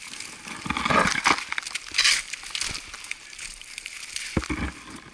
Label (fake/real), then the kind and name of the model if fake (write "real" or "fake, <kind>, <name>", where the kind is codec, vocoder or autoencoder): real